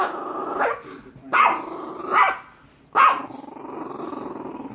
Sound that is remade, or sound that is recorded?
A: recorded